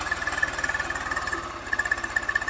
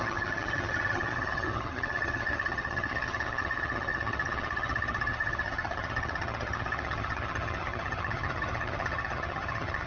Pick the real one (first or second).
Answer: first